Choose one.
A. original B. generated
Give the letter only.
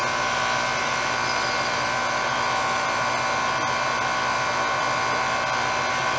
A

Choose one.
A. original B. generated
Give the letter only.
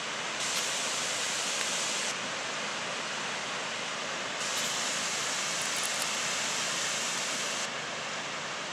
A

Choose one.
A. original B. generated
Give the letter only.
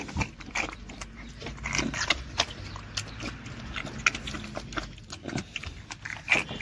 A